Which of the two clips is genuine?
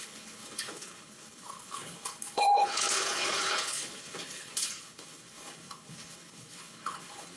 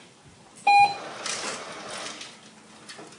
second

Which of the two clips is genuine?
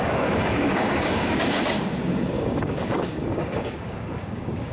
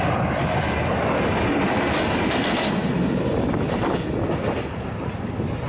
second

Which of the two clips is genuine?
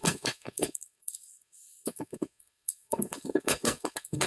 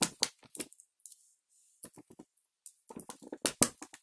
second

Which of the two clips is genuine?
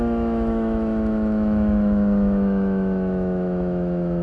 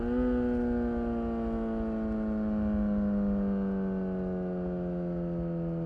second